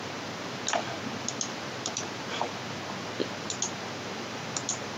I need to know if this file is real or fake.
real